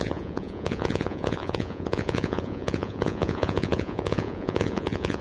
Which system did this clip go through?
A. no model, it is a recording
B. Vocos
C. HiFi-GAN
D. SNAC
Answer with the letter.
B